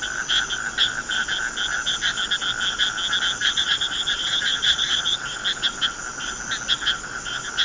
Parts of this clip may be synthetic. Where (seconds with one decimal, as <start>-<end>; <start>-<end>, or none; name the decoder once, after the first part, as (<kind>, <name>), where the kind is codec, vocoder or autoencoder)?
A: 3.4-5.2 (vocoder, Vocos)